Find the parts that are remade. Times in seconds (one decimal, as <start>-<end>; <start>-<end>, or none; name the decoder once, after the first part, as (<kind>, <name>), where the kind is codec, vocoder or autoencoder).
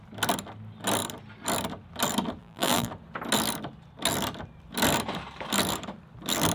2.4-2.9 (vocoder, BigVGAN v2)